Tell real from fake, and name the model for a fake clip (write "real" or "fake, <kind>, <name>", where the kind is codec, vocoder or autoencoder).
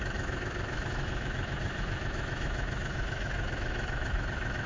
fake, autoencoder, DAC-VAE